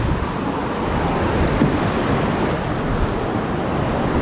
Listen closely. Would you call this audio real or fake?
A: real